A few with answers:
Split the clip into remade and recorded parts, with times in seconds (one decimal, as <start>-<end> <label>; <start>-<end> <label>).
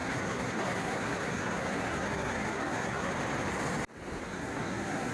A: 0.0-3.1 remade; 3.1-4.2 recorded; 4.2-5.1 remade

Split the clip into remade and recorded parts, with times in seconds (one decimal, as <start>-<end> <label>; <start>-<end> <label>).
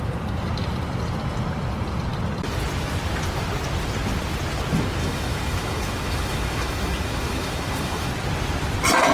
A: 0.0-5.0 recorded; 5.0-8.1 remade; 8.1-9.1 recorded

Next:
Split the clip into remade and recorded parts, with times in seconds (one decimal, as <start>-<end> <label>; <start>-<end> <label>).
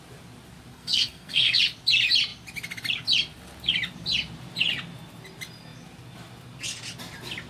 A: 0.0-0.7 recorded; 0.7-1.6 remade; 1.6-7.5 recorded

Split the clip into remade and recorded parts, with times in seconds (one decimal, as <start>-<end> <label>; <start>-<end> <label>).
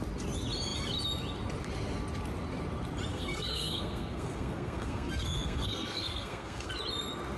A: 0.0-3.1 recorded; 3.1-6.7 remade; 6.7-7.4 recorded